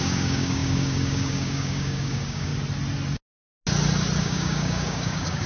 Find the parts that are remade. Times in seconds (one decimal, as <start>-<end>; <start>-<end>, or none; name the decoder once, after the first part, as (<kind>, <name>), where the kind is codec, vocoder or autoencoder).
0.0-2.5 (codec, DAC); 4.2-5.5